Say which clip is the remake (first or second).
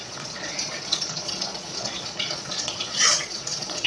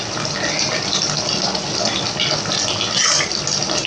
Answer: first